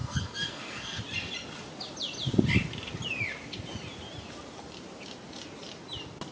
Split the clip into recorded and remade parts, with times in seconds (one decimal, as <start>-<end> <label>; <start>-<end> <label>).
0.0-1.0 remade; 1.0-6.3 recorded